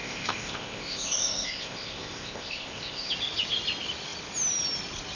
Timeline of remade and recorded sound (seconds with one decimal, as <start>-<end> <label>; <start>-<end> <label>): 0.0-3.1 remade; 3.1-5.2 recorded